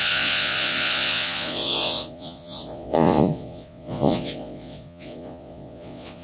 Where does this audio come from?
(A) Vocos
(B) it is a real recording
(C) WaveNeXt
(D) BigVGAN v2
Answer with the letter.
A